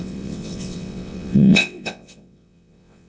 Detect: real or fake fake